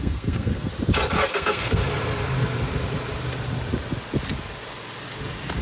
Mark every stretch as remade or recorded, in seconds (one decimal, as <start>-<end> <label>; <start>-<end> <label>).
0.0-0.7 remade; 0.7-1.3 recorded; 1.3-1.8 remade; 1.8-5.6 recorded

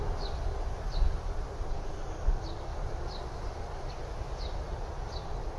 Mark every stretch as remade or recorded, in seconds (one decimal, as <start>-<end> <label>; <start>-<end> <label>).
0.0-2.7 recorded; 2.7-3.6 remade; 3.6-5.6 recorded

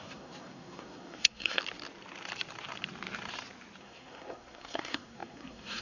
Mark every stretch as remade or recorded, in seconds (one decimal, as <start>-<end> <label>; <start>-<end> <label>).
0.0-1.6 remade; 1.6-3.8 recorded; 3.8-5.8 remade

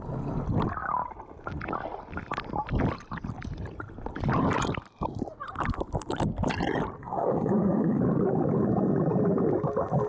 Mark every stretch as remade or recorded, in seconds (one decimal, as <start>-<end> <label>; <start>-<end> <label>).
0.0-7.0 recorded; 7.0-8.0 remade; 8.0-10.1 recorded

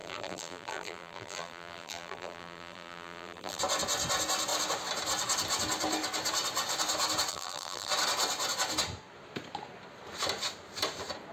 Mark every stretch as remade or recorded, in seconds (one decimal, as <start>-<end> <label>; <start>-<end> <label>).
0.0-3.6 remade; 3.6-7.3 recorded; 7.3-7.9 remade; 7.9-11.3 recorded

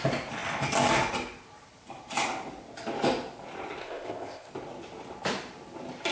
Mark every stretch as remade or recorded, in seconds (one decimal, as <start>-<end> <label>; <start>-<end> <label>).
0.0-3.8 recorded; 3.8-4.5 remade; 4.5-6.1 recorded